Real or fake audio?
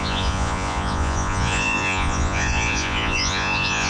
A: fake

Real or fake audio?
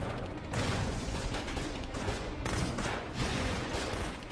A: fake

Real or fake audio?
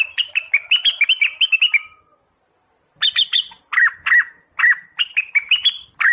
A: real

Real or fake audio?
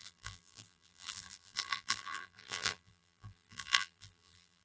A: fake